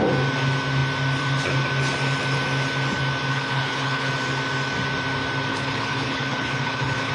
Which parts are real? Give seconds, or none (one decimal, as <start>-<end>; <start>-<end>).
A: 0.0-3.3; 4.1-5.5

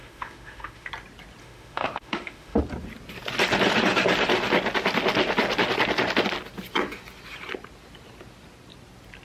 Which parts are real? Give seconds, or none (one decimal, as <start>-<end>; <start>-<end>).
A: 0.9-1.4; 2.6-9.2

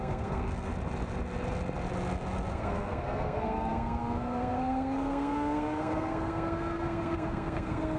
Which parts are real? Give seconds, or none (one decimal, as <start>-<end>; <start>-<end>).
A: 0.7-2.5